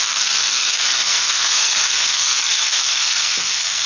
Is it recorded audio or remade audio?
remade